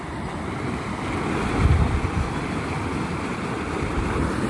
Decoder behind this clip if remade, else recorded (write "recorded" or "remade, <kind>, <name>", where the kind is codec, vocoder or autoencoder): recorded